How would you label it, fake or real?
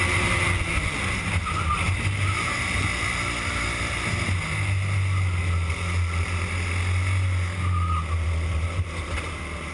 real